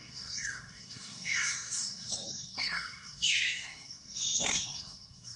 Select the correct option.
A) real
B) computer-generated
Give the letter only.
B